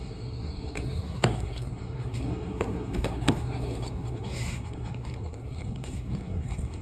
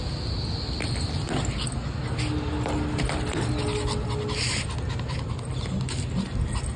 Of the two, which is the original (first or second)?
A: second